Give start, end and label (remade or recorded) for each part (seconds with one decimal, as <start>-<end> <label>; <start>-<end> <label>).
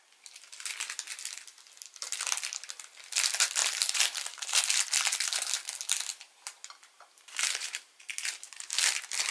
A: 0.0-3.6 recorded; 3.6-4.6 remade; 4.6-6.1 recorded; 6.1-8.1 remade; 8.1-9.3 recorded